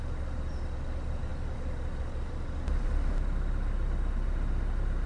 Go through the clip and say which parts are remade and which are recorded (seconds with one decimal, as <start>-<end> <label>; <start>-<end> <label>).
0.0-5.1 recorded